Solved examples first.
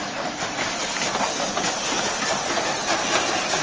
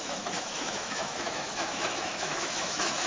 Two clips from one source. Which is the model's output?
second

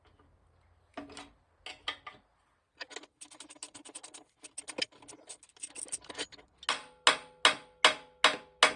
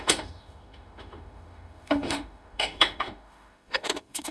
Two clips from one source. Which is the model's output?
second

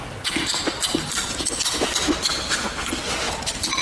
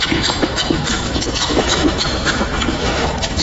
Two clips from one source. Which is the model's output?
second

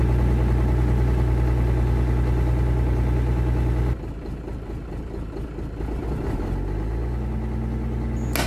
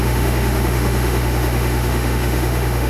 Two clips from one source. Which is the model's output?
second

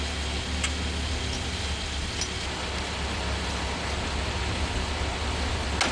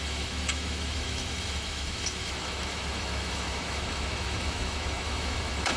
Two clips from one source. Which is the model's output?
second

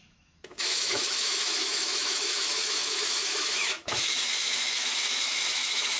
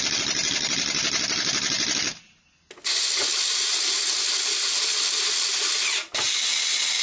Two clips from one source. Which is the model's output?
first